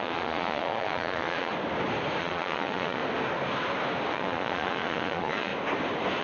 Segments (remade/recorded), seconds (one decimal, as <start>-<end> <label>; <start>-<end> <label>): 0.0-1.5 remade; 1.5-2.2 recorded; 2.2-3.0 remade; 3.0-4.1 recorded; 4.1-5.5 remade; 5.5-6.2 recorded